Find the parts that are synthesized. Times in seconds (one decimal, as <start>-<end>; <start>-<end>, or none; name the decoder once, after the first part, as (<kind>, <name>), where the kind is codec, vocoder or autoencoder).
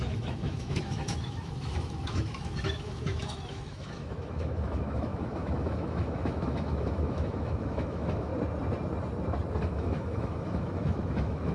0.0-8.3 (autoencoder, DAC-VAE); 9.6-11.5